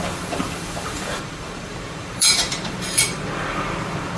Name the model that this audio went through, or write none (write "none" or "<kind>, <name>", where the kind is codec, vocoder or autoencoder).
vocoder, BigVGAN v2